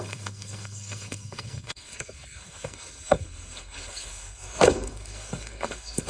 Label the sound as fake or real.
fake